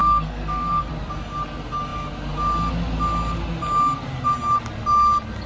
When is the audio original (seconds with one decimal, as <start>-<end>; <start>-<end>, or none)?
0.9-5.5